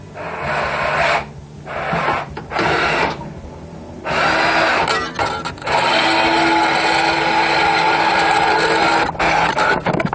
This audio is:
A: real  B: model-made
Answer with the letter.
A